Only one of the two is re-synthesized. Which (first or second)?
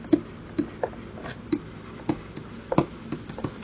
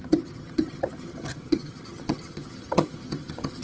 second